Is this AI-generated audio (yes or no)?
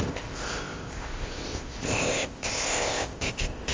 yes